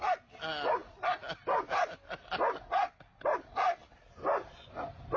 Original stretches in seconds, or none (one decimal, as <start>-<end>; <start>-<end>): 0.0-5.2